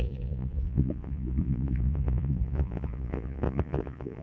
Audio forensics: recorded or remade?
remade